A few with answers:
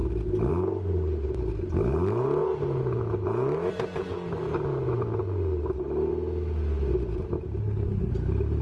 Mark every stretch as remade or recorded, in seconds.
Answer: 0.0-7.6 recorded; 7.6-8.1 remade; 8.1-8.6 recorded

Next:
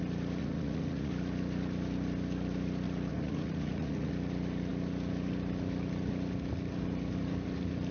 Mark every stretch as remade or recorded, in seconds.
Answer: 0.0-0.4 recorded; 0.4-1.1 remade; 1.1-3.1 recorded; 3.1-4.1 remade; 4.1-7.9 recorded